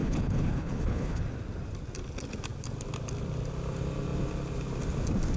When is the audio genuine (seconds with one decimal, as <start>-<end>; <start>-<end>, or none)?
1.2-5.4